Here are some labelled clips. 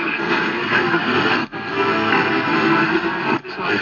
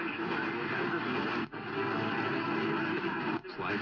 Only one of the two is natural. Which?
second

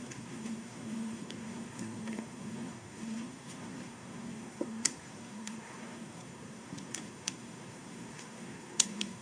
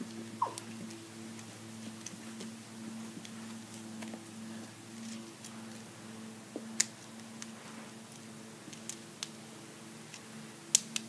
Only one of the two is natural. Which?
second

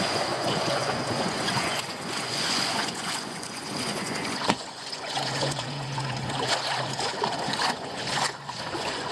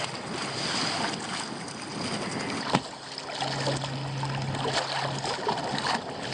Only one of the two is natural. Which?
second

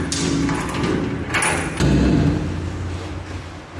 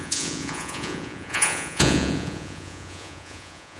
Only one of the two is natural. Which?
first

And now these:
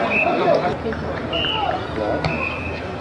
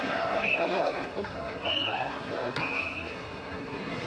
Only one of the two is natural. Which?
first